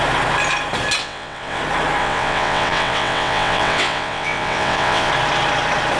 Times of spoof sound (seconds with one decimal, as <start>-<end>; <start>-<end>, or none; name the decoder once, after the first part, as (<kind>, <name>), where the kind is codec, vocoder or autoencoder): 1.0-1.6 (vocoder, WaveNeXt); 2.0-5.1